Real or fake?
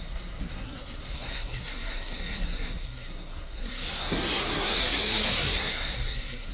fake